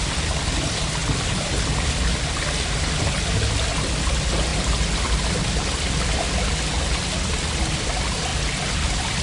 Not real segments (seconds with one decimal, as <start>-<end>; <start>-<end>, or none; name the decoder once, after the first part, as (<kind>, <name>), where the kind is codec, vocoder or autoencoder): none